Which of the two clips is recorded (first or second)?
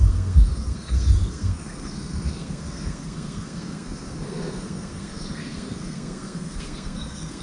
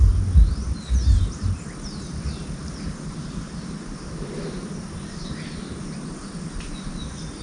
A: second